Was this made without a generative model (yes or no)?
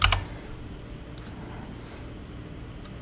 yes